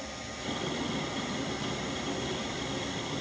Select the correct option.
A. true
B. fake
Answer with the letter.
A